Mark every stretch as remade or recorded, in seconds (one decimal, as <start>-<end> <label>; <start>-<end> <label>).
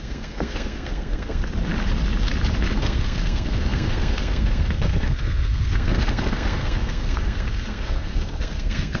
0.0-1.4 remade; 1.4-2.7 recorded; 2.7-9.0 remade